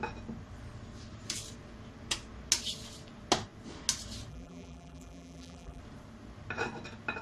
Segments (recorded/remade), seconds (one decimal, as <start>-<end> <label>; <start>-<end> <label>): 0.0-4.3 recorded; 4.3-5.8 remade; 5.8-7.2 recorded